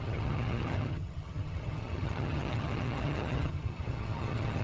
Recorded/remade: remade